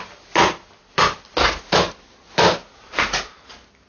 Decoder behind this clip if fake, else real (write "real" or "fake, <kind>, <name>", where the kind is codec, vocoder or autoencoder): real